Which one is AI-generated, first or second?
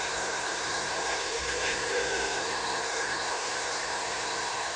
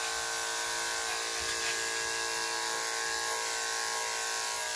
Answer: first